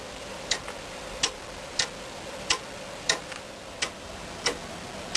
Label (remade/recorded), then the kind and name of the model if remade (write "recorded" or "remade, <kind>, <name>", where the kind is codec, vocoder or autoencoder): recorded